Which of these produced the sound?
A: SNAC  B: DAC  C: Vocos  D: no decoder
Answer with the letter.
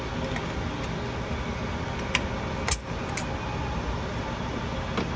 D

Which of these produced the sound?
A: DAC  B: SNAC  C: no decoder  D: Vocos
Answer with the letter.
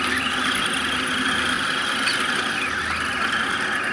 C